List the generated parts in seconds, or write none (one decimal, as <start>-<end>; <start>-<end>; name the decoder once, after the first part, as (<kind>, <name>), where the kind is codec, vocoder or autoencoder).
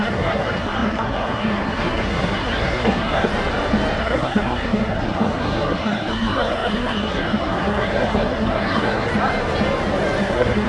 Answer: 0.0-3.3 (codec, SNAC); 4.0-9.1; 10.2-10.7